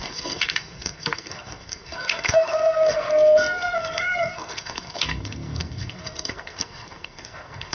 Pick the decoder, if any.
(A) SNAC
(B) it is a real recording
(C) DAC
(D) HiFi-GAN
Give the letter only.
A